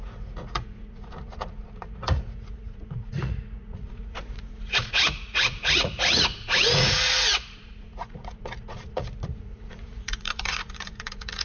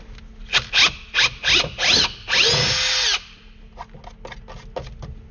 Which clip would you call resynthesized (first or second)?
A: first